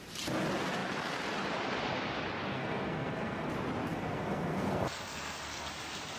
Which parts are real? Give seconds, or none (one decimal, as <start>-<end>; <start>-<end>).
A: 0.0-2.5; 3.5-3.9; 5.7-6.2